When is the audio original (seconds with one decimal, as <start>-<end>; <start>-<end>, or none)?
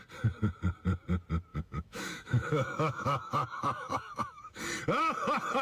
0.0-1.5; 4.6-5.6